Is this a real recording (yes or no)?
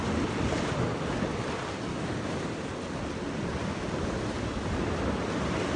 yes